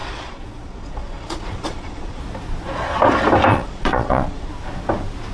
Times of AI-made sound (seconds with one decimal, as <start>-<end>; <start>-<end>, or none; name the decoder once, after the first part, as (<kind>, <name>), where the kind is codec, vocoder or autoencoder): 0.0-2.2 (vocoder, Vocos); 3.5-4.5